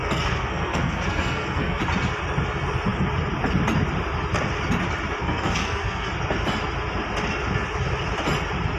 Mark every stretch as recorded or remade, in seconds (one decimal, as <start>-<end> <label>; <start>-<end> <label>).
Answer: 0.0-1.8 remade; 1.8-5.2 recorded; 5.2-6.1 remade; 6.1-8.8 recorded